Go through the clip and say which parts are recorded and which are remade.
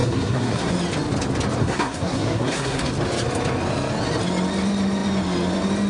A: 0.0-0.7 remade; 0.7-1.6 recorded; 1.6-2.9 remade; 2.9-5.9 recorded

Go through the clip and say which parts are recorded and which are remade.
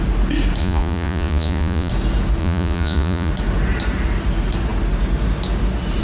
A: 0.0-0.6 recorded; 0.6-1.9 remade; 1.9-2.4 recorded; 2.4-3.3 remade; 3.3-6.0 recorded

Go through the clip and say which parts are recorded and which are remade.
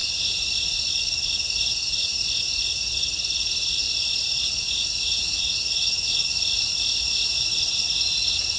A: 0.0-8.6 recorded